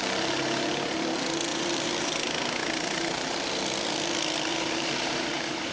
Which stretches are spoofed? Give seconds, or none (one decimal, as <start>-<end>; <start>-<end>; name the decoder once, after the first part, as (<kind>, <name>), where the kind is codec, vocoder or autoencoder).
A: 1.5-2.1 (vocoder, BigVGAN v2); 2.6-3.4; 4.5-5.7